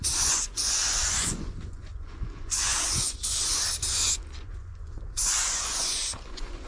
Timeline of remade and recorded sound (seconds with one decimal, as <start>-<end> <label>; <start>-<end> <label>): 0.0-3.5 remade; 3.5-3.9 recorded; 3.9-6.7 remade